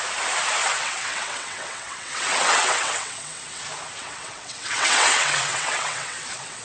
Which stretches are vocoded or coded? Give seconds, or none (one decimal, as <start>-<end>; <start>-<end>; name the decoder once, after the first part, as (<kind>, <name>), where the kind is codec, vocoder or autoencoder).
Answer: 0.6-3.6 (vocoder, WaveNeXt); 4.0-6.6